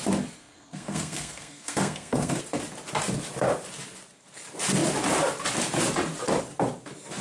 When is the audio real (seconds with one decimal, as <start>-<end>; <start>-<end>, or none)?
0.0-0.4; 2.4-7.2